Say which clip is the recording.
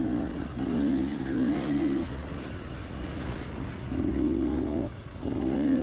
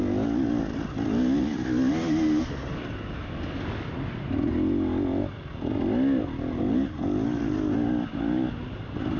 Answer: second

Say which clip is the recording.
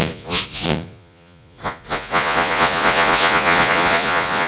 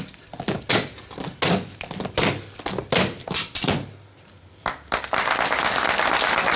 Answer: second